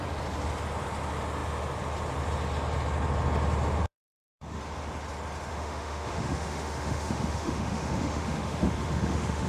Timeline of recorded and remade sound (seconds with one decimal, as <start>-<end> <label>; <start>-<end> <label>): 0.0-3.8 recorded; 3.8-4.6 remade; 4.6-5.5 recorded; 5.5-9.5 remade